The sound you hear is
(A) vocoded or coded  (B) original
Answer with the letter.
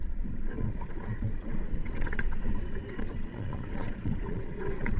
A